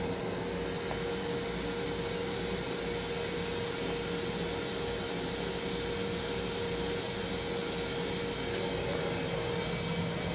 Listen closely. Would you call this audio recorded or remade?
recorded